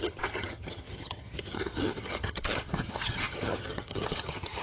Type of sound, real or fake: fake